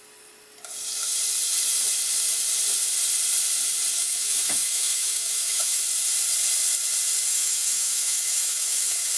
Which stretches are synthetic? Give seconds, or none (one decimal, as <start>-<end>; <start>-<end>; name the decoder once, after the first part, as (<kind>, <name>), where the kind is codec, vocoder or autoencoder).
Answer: 4.0-5.8 (autoencoder, DAC-VAE); 7.3-9.2